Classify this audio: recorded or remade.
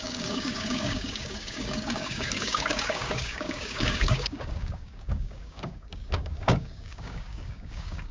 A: remade